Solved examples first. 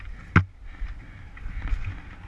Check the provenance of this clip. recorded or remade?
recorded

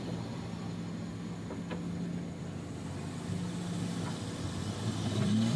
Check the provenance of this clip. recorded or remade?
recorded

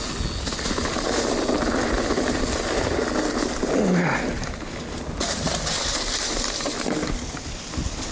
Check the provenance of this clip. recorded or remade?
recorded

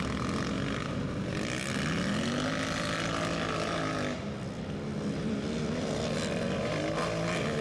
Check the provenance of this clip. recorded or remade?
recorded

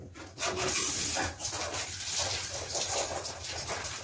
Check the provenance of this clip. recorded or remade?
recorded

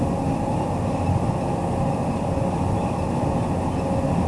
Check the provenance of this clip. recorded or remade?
recorded